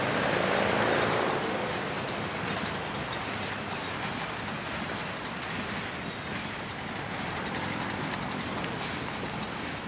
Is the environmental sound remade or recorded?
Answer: recorded